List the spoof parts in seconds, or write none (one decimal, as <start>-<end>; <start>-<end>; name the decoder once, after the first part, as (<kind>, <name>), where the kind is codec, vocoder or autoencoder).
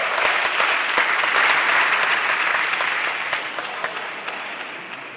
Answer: none